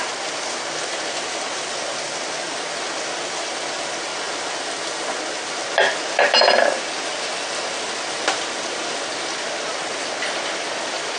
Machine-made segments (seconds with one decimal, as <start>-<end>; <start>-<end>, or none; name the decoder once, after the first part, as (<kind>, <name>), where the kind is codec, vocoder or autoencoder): 0.0-4.1 (vocoder, BigVGAN v2); 8.3-11.2